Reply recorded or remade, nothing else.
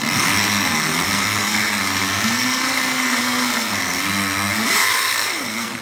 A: remade